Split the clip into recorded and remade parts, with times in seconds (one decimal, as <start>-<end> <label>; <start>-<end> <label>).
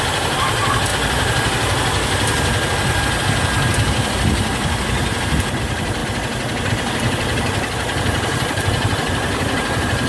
0.0-0.9 remade; 0.9-5.6 recorded; 5.6-6.0 remade; 6.0-6.7 recorded; 6.7-10.1 remade